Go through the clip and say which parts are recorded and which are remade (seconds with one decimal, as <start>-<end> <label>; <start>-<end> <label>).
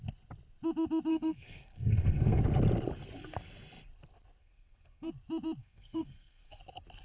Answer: 0.0-1.1 recorded; 1.1-2.4 remade; 2.4-4.4 recorded; 4.4-5.1 remade; 5.1-5.6 recorded; 5.6-6.6 remade; 6.6-7.0 recorded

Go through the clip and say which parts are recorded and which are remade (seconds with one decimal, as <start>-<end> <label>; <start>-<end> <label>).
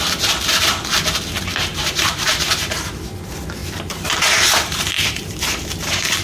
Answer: 0.0-1.7 recorded; 1.7-2.7 remade; 2.7-3.6 recorded; 3.6-5.6 remade; 5.6-6.2 recorded